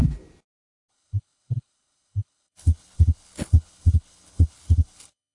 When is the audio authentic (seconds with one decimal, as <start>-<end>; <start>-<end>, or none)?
0.0-0.9